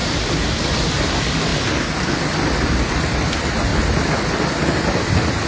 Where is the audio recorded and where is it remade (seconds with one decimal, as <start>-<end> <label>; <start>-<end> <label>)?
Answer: 0.0-5.5 recorded